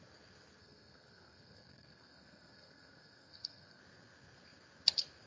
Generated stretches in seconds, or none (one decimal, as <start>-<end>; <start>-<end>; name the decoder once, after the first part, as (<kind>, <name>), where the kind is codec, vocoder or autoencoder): 0.6-3.8 (codec, SNAC)